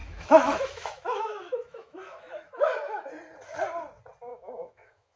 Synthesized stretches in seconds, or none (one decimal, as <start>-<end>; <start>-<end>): 0.0-3.1; 4.3-5.2